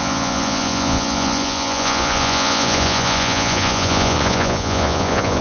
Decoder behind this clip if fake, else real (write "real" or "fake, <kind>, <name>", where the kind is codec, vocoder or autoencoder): fake, vocoder, Vocos